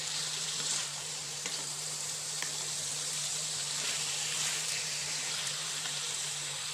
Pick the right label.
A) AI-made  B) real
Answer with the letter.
A